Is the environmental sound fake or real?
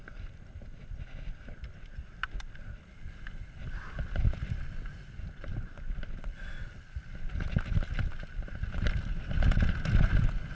real